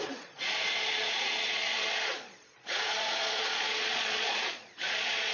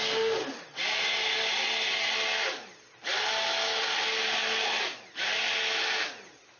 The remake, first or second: first